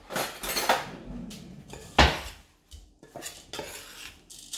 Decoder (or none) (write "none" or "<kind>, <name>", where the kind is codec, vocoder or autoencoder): none